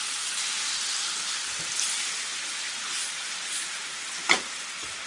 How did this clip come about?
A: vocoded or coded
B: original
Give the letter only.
B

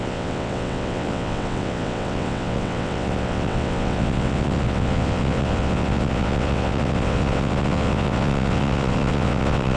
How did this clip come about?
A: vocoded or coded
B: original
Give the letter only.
A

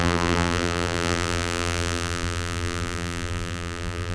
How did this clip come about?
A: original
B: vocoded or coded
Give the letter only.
B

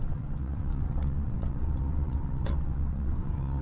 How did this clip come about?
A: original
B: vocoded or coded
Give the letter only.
B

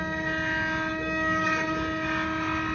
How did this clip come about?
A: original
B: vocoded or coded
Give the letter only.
A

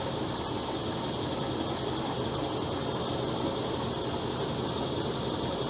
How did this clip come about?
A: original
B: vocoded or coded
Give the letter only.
A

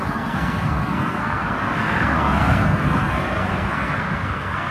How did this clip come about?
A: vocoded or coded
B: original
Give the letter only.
A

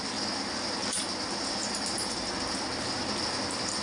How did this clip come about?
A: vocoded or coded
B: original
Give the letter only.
B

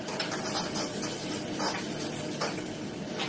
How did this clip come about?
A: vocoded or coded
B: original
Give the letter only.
B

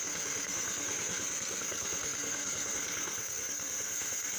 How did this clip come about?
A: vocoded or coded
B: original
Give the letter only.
A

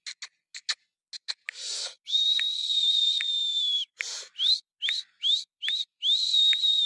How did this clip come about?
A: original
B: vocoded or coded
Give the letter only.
A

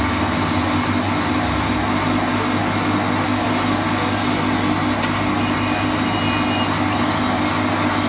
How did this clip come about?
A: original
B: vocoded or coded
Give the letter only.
A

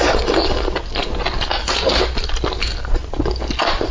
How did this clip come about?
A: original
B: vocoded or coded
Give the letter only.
A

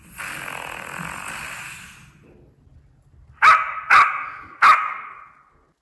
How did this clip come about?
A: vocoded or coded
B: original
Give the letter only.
B